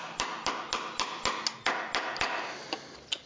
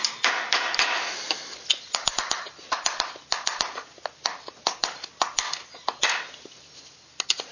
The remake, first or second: first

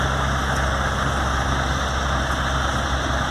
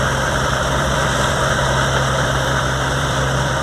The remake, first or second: second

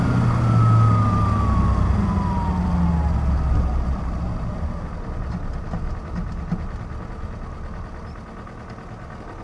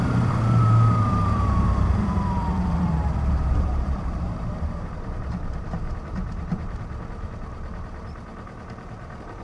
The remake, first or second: second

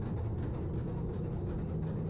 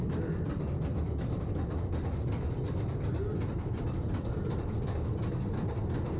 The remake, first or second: second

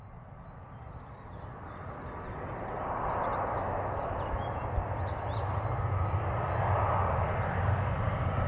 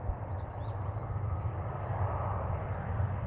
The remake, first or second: second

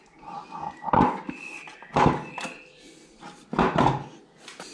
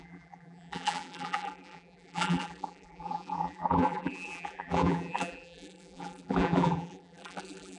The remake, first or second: second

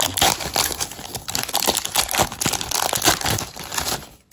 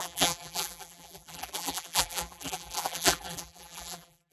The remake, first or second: second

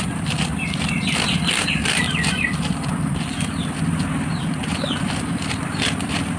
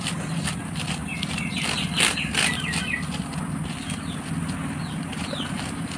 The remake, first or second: first